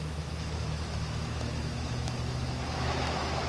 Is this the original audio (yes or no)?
no